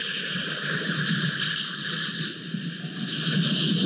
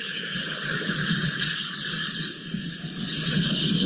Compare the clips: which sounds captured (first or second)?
first